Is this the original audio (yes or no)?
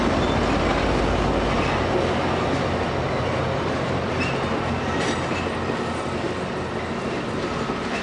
yes